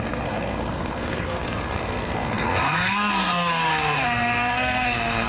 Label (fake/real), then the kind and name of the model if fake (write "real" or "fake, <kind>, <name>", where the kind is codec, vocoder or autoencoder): fake, codec, SNAC